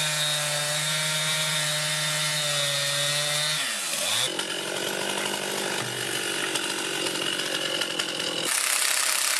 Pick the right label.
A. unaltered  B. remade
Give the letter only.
A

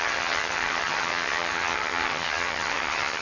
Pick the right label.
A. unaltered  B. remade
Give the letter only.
B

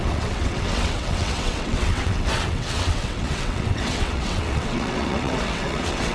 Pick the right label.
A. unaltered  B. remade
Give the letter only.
B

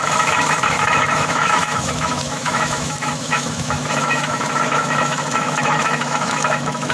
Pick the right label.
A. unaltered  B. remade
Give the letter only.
B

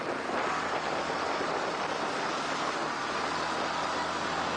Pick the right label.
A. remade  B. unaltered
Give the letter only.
B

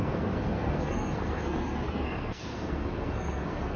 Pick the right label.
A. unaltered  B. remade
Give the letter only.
B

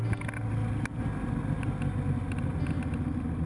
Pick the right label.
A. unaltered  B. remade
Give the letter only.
A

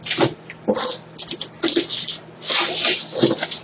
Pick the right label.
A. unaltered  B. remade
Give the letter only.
A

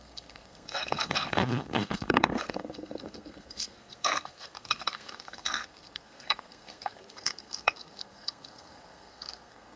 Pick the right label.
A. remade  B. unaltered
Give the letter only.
A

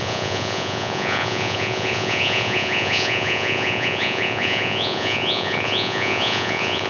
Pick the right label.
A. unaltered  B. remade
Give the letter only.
B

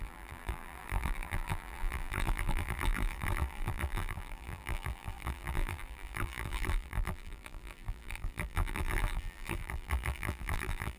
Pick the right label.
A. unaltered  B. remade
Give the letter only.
B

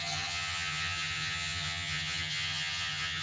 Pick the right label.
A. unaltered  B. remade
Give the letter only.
B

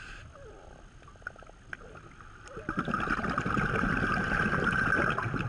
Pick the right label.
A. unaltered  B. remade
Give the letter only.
A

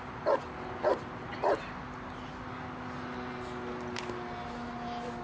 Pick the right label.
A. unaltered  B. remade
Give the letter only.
A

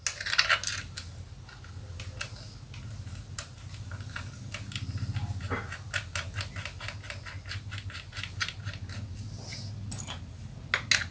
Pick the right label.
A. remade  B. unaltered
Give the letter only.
B